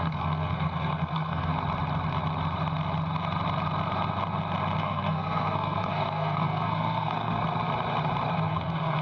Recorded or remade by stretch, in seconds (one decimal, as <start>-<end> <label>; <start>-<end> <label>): 0.0-1.5 remade; 1.5-4.8 recorded; 4.8-7.4 remade; 7.4-8.3 recorded; 8.3-9.0 remade

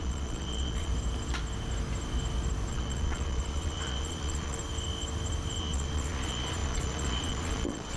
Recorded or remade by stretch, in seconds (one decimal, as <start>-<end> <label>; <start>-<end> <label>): 0.0-0.9 remade; 0.9-2.7 recorded; 2.7-4.6 remade; 4.6-5.6 recorded; 5.6-8.0 remade

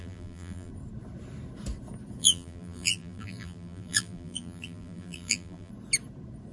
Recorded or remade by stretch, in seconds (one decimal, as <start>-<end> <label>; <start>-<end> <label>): 0.0-0.7 remade; 0.7-2.2 recorded; 2.2-5.7 remade; 5.7-6.5 recorded

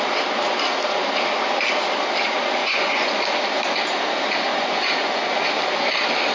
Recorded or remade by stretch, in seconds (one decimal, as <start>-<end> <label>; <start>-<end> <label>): 0.0-2.6 recorded; 2.6-3.2 remade; 3.2-4.5 recorded; 4.5-5.3 remade; 5.3-6.3 recorded

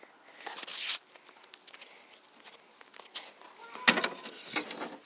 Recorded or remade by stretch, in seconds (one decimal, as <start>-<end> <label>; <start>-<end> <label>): 0.0-5.1 recorded

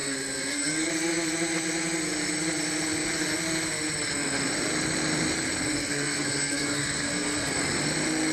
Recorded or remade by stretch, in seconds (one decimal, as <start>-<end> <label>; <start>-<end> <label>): 0.0-0.9 remade; 0.9-5.8 recorded; 5.8-7.6 remade; 7.6-8.3 recorded

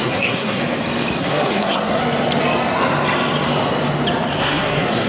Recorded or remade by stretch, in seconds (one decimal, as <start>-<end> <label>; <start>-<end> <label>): 0.0-0.6 remade; 0.6-1.2 recorded; 1.2-2.0 remade; 2.0-4.4 recorded; 4.4-5.1 remade